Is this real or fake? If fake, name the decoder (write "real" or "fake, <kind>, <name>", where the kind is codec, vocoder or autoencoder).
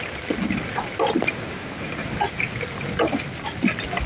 real